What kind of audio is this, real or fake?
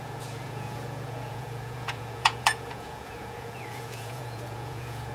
fake